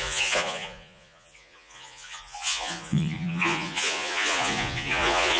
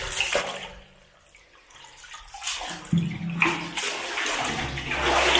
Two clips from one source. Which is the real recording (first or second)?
second